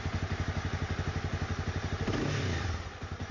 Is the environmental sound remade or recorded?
recorded